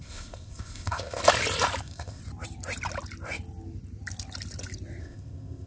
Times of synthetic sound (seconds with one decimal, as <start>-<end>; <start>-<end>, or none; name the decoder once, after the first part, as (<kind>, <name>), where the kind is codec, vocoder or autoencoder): 0.0-1.2 (codec, ZipCodec); 1.8-2.2; 5.0-5.7